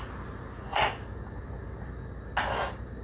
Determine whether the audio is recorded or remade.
recorded